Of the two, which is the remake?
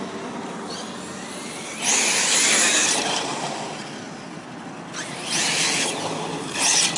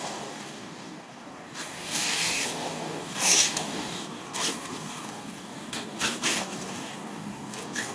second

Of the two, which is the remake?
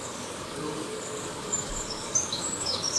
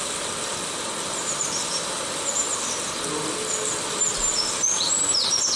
first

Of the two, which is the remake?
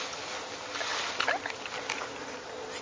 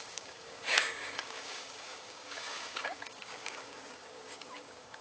second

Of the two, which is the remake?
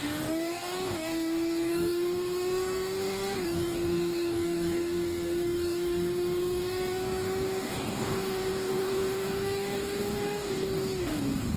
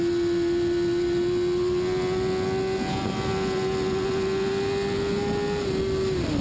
first